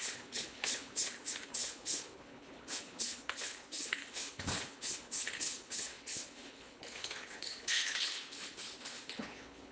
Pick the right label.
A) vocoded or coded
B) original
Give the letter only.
A